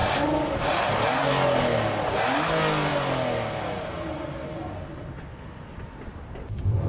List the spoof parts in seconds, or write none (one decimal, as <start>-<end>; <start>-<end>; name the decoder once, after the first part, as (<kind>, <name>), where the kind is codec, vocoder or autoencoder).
none